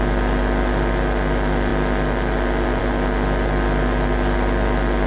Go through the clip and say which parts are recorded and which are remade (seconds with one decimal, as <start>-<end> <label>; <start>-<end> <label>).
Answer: 0.0-5.1 recorded